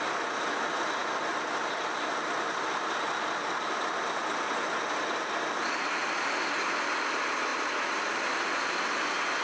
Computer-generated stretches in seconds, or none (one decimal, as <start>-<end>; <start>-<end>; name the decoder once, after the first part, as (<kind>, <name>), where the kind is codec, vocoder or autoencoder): 1.0-3.9 (vocoder, BigVGAN v2); 6.0-6.6; 7.5-8.3